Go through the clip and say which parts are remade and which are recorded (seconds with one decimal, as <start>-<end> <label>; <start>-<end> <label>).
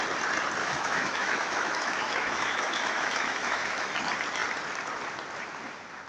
0.0-0.6 recorded; 0.6-4.0 remade; 4.0-6.1 recorded